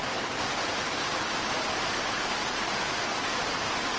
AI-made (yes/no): no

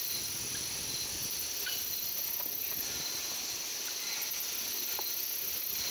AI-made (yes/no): no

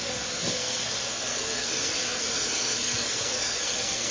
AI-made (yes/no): yes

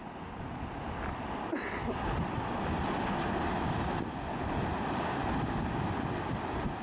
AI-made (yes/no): no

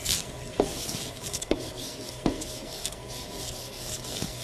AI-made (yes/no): yes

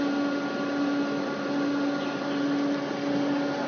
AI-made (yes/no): no